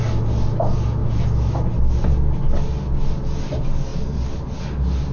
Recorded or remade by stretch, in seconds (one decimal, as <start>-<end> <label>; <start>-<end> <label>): 0.0-1.0 recorded; 1.0-1.7 remade; 1.7-5.1 recorded